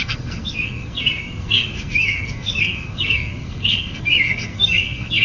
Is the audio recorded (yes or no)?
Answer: no